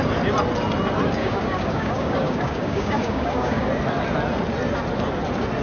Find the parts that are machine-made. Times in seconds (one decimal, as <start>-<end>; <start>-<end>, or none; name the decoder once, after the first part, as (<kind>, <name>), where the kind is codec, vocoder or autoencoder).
1.2-3.7 (codec, DAC)